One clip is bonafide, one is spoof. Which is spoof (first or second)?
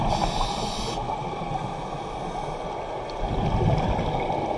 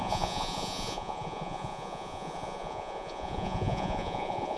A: second